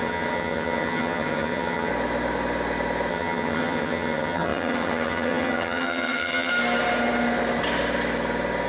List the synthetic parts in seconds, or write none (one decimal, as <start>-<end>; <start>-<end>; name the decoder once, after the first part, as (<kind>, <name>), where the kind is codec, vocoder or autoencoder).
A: 0.0-1.9 (vocoder, HiFi-GAN); 3.1-6.5